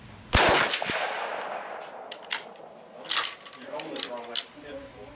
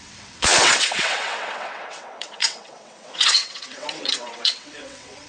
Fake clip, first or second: second